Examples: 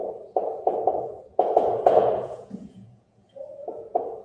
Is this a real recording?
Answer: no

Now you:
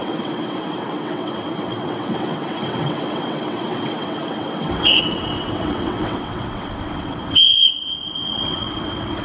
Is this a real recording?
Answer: no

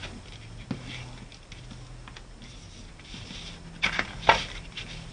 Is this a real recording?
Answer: yes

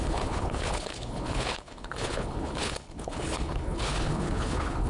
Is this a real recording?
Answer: no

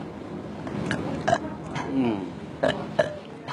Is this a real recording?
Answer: yes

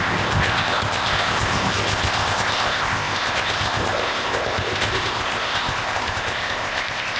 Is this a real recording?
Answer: no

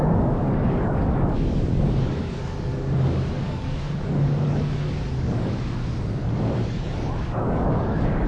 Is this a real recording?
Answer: no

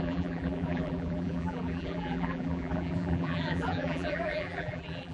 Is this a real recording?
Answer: no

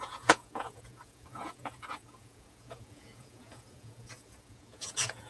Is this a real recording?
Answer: no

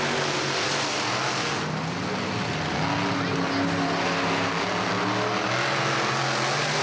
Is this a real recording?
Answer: yes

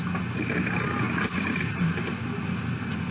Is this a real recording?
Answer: yes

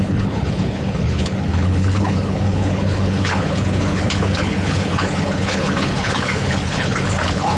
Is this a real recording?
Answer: no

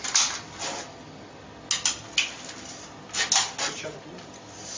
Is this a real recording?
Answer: yes